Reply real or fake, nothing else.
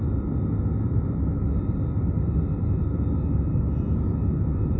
real